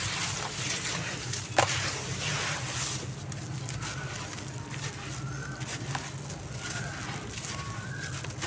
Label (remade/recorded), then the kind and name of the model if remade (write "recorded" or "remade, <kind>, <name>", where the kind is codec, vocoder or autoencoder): recorded